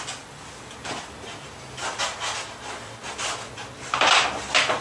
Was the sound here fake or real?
real